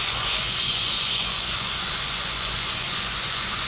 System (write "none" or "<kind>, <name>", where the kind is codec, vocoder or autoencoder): vocoder, Vocos